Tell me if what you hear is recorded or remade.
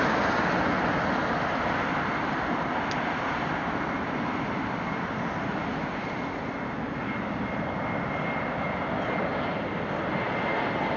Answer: recorded